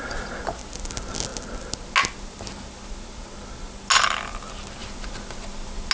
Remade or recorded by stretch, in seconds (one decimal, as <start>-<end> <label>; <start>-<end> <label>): 0.0-5.9 recorded